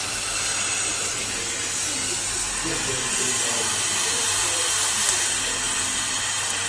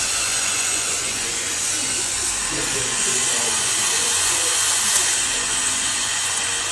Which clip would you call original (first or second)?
first